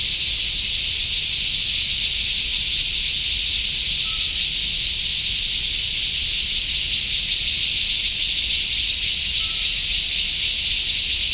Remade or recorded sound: recorded